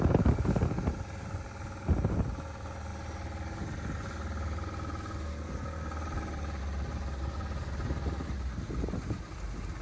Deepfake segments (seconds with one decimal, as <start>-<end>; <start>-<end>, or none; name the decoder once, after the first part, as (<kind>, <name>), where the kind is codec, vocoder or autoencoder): none